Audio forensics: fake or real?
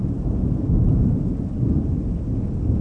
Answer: real